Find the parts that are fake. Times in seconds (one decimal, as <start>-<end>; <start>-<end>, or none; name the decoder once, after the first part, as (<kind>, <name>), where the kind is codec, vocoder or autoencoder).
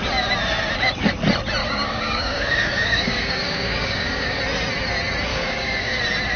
1.6-4.4 (codec, DAC); 5.3-6.0